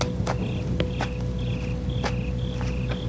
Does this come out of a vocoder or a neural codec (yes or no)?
no